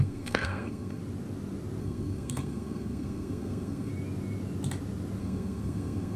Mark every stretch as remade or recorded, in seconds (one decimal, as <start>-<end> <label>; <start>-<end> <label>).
0.0-1.0 remade; 1.0-1.8 recorded; 1.8-3.9 remade; 3.9-5.2 recorded; 5.2-6.2 remade